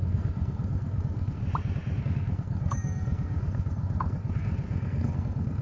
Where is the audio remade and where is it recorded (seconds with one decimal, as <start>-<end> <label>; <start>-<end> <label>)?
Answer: 0.0-1.4 remade; 1.4-2.0 recorded; 2.0-5.6 remade